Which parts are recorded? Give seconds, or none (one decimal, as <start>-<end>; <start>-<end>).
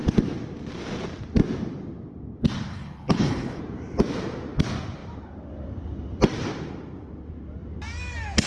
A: 0.0-2.7; 3.6-8.5